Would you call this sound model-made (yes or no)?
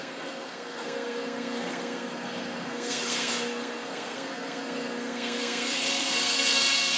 yes